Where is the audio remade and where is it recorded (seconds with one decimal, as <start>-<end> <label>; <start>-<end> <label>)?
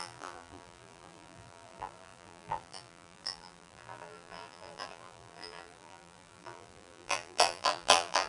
0.0-8.3 remade